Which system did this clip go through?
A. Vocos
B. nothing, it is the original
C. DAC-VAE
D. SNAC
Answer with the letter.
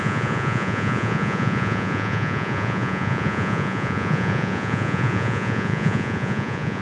A